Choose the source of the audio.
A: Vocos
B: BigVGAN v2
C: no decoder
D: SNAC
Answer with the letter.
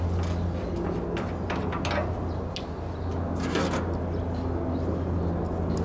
C